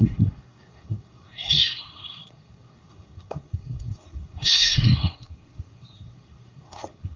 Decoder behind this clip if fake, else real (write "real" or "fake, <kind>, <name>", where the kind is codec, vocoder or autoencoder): fake, codec, SNAC